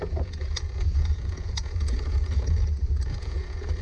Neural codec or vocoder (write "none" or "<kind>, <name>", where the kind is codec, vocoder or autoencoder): vocoder, Vocos